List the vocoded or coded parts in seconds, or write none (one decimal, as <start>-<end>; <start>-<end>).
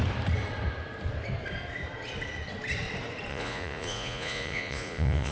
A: 3.3-5.3